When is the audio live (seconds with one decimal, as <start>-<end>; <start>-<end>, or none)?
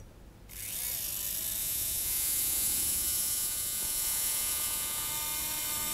0.0-1.6; 5.1-5.9